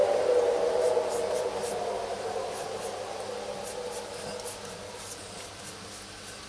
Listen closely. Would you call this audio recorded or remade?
recorded